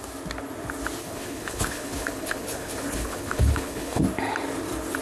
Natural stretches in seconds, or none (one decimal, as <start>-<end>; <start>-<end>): 0.0-1.0; 4.0-5.0